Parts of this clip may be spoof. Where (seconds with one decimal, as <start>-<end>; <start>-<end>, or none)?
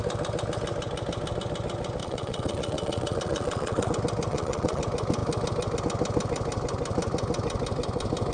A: 2.0-3.9; 4.3-4.8